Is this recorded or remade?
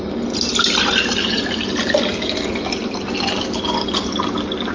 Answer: recorded